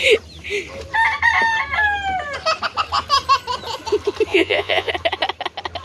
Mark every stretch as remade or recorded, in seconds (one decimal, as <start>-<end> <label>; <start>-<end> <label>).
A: 0.0-4.3 recorded; 4.3-4.9 remade; 4.9-5.8 recorded

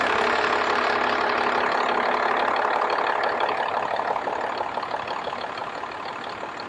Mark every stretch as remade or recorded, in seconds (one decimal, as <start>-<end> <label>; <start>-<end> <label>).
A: 0.0-6.7 recorded

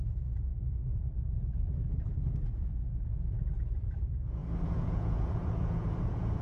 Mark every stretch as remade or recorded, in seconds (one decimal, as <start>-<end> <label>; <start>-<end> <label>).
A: 0.0-0.5 remade; 0.5-2.5 recorded; 2.5-6.4 remade